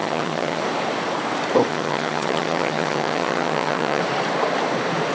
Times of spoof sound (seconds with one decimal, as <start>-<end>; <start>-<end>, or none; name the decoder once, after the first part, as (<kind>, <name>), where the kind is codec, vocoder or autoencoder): 0.0-0.6 (vocoder, HiFi-GAN); 1.7-4.0